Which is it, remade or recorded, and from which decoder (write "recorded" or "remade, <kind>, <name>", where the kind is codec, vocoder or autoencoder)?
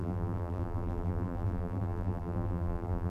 remade, vocoder, BigVGAN v2